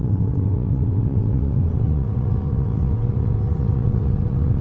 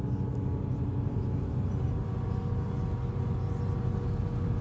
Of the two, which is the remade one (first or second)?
first